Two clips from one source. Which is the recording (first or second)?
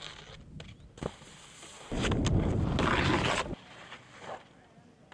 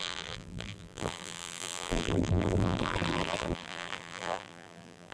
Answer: first